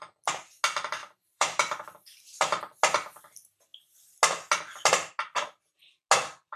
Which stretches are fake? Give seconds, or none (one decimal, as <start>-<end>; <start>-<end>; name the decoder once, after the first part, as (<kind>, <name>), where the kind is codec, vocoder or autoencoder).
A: 1.0-2.6 (vocoder, BigVGAN v2)